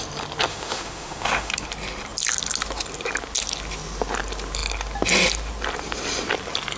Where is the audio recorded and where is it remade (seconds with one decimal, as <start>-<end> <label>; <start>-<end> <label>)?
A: 0.0-0.5 recorded; 0.5-1.5 remade; 1.5-6.8 recorded